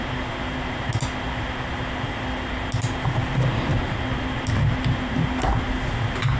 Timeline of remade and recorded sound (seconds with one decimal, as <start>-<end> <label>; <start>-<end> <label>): 0.0-6.4 recorded